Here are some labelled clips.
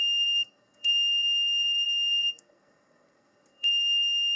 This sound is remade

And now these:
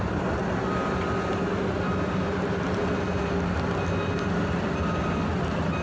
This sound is recorded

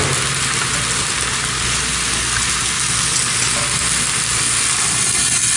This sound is recorded